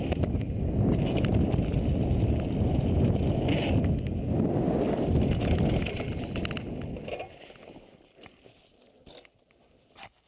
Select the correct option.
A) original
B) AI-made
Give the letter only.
A